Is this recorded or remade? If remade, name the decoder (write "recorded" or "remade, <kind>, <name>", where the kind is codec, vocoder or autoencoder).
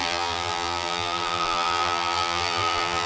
remade, vocoder, BigVGAN v2